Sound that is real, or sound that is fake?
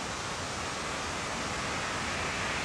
real